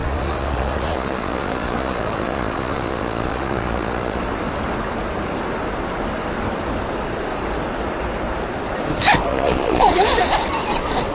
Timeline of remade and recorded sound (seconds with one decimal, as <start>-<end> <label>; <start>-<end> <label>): 0.0-4.2 remade; 4.2-9.3 recorded; 9.3-10.2 remade; 10.2-11.1 recorded